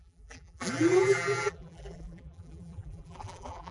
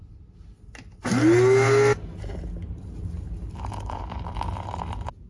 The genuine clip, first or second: second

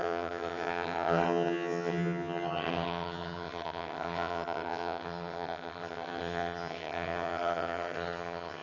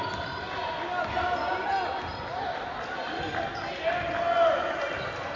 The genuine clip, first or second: second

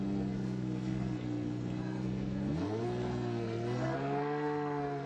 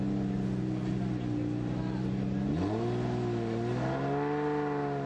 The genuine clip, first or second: second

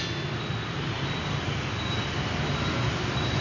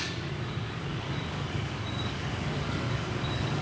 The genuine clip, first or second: first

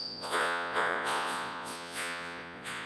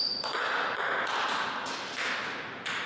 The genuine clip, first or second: second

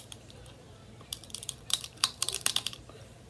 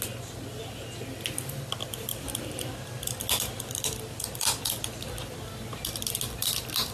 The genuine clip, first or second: second